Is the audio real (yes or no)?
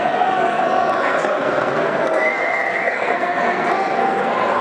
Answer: no